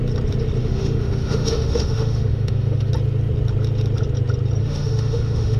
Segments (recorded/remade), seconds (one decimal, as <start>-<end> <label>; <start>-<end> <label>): 0.0-0.6 recorded; 0.6-2.9 remade; 2.9-4.6 recorded; 4.6-5.6 remade

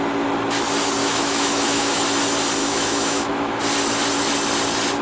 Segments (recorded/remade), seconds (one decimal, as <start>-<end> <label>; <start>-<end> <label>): 0.0-1.0 recorded; 1.0-2.0 remade; 2.0-2.6 recorded; 2.6-3.6 remade; 3.6-5.0 recorded

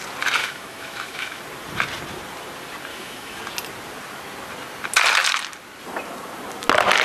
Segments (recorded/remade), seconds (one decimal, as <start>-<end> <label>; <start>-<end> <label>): 0.0-0.4 recorded; 0.4-1.4 remade; 1.4-2.9 recorded; 2.9-3.4 remade; 3.4-7.0 recorded

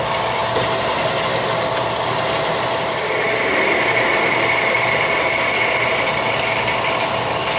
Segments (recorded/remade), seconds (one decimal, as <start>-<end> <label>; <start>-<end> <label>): 0.0-7.6 recorded

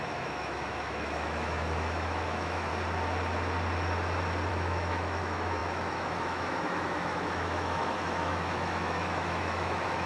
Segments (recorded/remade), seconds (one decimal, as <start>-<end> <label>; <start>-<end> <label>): 0.0-2.7 remade; 2.7-4.5 recorded; 4.5-10.1 remade

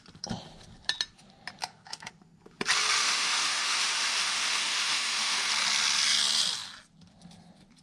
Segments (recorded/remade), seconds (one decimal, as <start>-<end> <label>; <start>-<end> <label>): 0.0-1.6 recorded; 1.6-2.1 remade; 2.1-3.0 recorded; 3.0-5.5 remade; 5.5-7.8 recorded